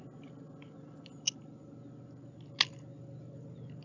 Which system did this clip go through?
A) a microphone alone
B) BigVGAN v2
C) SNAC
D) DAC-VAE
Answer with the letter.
A